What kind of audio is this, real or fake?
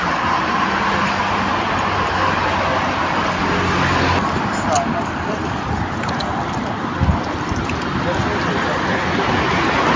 real